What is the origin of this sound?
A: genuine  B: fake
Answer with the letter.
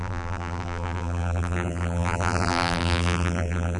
B